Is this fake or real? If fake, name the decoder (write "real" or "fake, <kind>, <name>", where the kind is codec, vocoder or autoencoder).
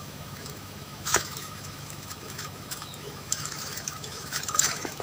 fake, autoencoder, DAC-VAE